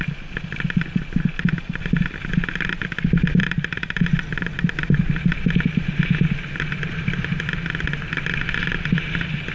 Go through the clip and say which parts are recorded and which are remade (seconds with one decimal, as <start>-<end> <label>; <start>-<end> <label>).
0.0-3.4 recorded; 3.4-4.0 remade; 4.0-9.5 recorded